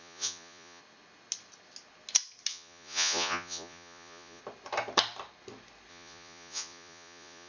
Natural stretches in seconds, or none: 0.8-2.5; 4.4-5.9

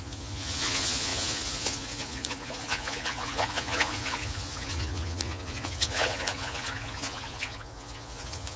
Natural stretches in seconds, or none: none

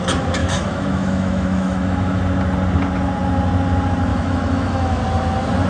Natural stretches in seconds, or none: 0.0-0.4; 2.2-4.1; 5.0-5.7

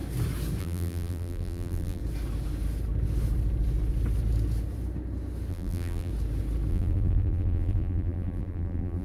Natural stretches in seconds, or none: 0.0-0.6; 2.0-5.5; 6.1-6.7